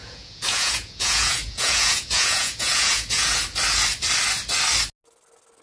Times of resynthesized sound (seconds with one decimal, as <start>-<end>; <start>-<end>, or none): 0.0-3.4